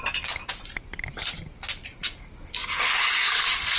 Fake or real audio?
real